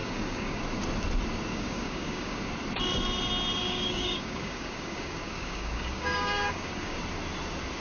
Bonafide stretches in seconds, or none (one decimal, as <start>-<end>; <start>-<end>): 0.6-1.5; 2.5-3.6; 7.0-7.8